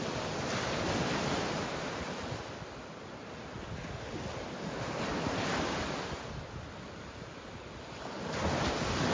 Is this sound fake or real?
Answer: real